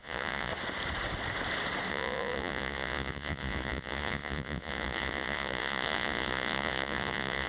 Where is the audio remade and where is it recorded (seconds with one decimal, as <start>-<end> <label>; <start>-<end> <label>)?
0.0-0.5 remade; 0.5-1.9 recorded; 1.9-7.5 remade